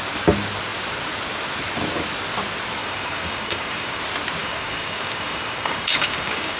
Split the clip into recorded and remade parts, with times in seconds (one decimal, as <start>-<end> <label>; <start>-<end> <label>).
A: 0.0-2.8 recorded; 2.8-4.0 remade; 4.0-4.4 recorded; 4.4-6.6 remade